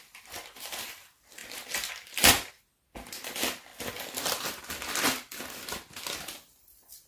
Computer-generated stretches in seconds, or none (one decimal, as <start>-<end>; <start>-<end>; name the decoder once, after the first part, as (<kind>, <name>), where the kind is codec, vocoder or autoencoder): none